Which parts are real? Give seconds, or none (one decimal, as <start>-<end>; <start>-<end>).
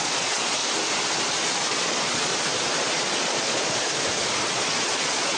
0.6-1.7; 2.3-2.8; 3.9-4.5